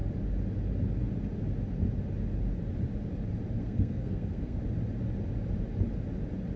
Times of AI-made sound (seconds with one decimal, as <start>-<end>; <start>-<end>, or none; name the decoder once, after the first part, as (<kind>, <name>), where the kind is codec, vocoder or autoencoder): 3.6-4.6 (codec, SNAC)